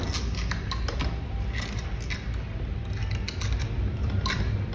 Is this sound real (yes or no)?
yes